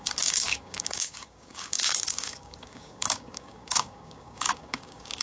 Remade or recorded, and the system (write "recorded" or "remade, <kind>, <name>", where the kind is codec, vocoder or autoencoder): remade, codec, DAC